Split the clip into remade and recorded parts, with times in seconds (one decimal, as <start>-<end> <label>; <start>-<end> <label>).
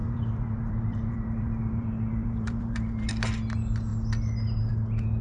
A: 0.0-3.1 remade; 3.1-5.2 recorded